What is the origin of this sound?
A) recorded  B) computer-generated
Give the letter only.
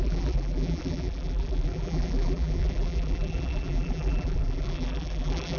B